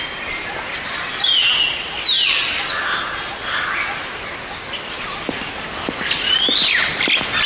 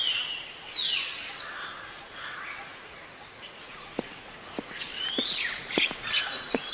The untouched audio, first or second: first